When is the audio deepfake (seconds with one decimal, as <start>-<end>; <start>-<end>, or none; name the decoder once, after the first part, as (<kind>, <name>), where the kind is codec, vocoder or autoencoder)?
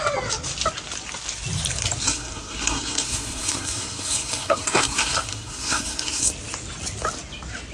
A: 2.0-6.3 (codec, SNAC)